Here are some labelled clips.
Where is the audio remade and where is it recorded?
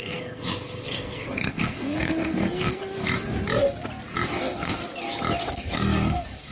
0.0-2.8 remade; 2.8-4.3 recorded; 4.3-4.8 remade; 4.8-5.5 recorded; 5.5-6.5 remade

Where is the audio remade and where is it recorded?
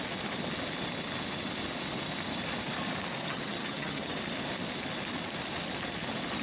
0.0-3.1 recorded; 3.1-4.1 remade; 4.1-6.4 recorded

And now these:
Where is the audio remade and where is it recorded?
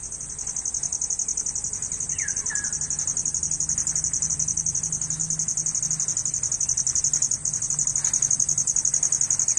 0.0-9.6 recorded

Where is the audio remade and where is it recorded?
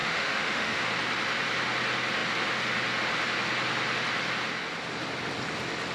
0.0-0.9 remade; 0.9-5.9 recorded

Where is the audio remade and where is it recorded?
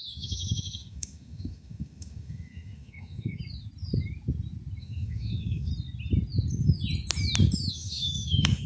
0.0-3.4 remade; 3.4-4.8 recorded; 4.8-5.7 remade; 5.7-7.7 recorded; 7.7-8.7 remade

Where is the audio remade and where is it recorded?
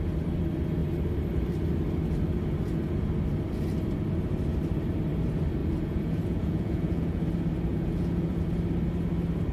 0.0-5.6 recorded; 5.6-7.2 remade; 7.2-7.7 recorded; 7.7-8.4 remade; 8.4-9.5 recorded